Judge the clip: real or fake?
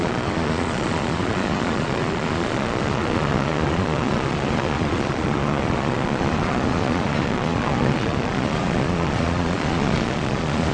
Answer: fake